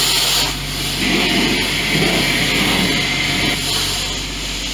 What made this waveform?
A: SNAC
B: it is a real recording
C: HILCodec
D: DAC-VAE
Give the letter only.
B